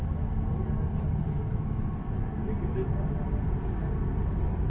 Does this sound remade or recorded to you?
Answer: recorded